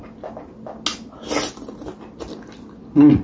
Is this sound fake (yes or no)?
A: no